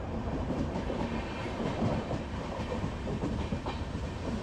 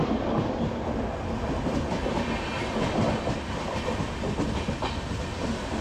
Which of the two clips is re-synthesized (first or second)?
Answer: first